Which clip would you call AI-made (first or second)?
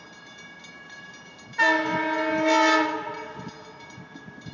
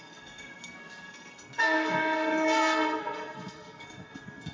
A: second